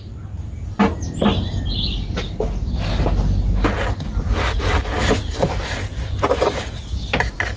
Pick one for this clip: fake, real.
real